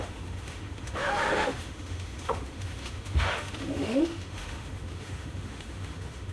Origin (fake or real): fake